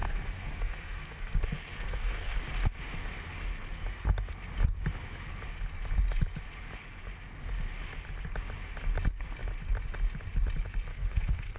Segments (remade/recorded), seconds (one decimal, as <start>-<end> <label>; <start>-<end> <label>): 0.0-2.4 remade; 2.4-10.9 recorded; 10.9-11.6 remade